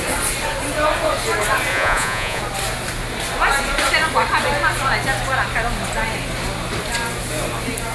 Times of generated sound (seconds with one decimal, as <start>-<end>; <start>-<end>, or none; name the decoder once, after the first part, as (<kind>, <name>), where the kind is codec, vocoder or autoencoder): 1.7-2.4 (vocoder, Vocos)